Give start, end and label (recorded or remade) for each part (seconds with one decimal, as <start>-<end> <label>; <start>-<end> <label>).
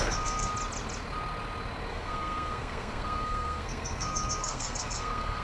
0.0-0.5 remade; 0.5-1.9 recorded; 1.9-5.4 remade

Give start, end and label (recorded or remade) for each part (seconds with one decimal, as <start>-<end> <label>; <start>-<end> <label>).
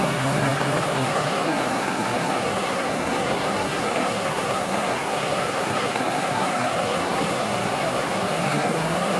0.0-9.2 remade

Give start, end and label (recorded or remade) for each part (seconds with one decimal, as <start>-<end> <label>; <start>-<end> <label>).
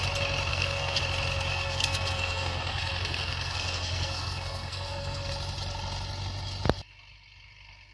0.0-0.5 recorded; 0.5-1.0 remade; 1.0-1.5 recorded; 1.5-5.3 remade; 5.3-7.9 recorded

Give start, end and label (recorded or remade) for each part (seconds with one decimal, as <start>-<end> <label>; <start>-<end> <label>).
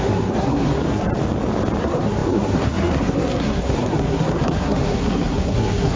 0.0-1.1 remade; 1.1-1.8 recorded; 1.8-6.0 remade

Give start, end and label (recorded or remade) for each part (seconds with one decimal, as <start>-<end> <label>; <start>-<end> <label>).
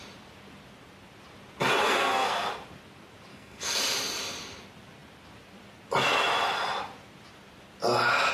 0.0-1.8 recorded; 1.8-2.5 remade; 2.5-3.3 recorded; 3.3-3.8 remade; 3.8-8.3 recorded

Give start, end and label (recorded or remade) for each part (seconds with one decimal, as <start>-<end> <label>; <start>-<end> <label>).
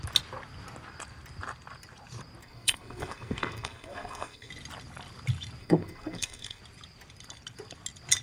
0.0-2.4 recorded; 2.4-4.5 remade; 4.5-5.6 recorded; 5.6-6.6 remade; 6.6-8.2 recorded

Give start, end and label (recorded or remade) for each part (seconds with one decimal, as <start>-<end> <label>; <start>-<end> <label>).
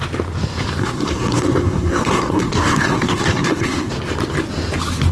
0.0-0.8 recorded; 0.8-3.9 remade; 3.9-5.1 recorded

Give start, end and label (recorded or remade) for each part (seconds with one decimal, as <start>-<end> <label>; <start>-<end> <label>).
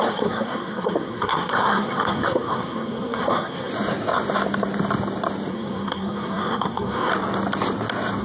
0.0-3.7 remade; 3.7-5.5 recorded; 5.5-7.1 remade; 7.1-8.2 recorded